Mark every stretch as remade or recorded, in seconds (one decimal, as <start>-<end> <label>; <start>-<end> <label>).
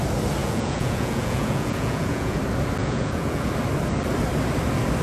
0.0-0.4 recorded; 0.4-2.4 remade; 2.4-2.8 recorded; 2.8-3.5 remade; 3.5-5.0 recorded